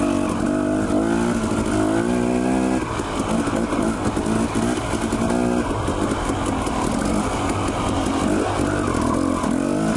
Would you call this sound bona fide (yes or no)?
yes